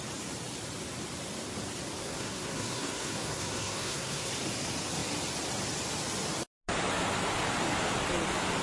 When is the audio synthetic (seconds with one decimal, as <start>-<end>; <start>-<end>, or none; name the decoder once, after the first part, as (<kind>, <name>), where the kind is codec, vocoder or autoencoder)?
2.0-4.3 (codec, SNAC)